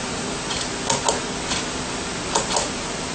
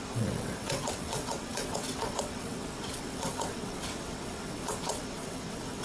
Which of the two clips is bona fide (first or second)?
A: first